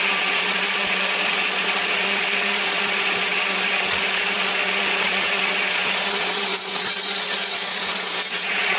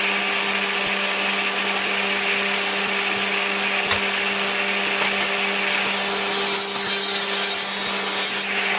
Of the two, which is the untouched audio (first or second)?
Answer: second